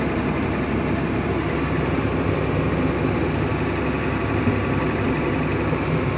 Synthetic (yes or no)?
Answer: no